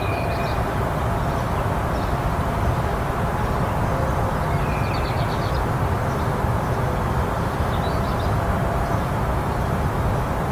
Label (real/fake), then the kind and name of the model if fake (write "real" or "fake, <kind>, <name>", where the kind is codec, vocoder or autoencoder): real